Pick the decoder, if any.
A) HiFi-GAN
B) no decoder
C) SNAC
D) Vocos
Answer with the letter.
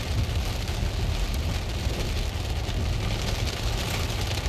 B